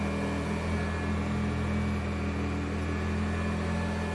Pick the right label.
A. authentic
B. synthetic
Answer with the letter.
A